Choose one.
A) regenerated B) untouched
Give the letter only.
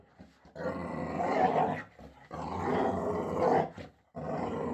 B